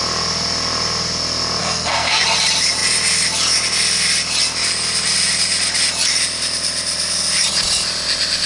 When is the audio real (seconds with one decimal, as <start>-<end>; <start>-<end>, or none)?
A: 0.0-1.6; 2.2-8.5